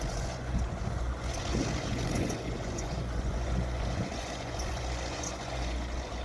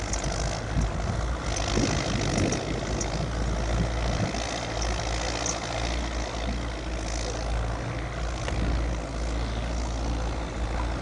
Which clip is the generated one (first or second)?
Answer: first